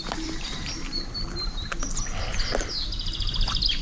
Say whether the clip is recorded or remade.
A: recorded